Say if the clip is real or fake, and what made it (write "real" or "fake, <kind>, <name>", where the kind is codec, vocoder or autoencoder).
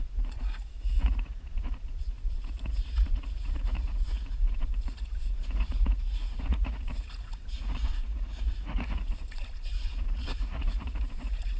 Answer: fake, vocoder, Vocos